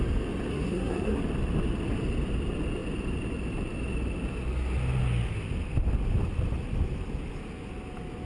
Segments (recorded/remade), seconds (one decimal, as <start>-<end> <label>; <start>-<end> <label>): 0.0-0.5 recorded; 0.5-1.2 remade; 1.2-8.3 recorded